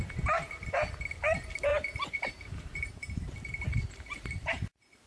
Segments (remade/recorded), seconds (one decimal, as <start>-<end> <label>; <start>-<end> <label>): 0.0-1.7 recorded; 1.7-5.1 remade